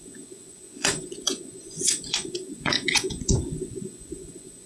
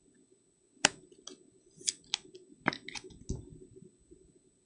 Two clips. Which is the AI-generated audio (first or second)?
first